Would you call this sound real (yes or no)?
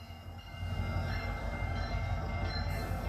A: no